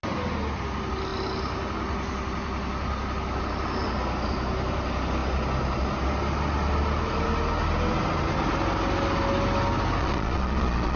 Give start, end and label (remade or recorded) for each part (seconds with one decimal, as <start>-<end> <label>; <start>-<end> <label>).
0.0-10.0 recorded; 10.0-11.0 remade